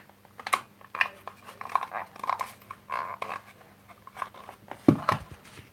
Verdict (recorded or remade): recorded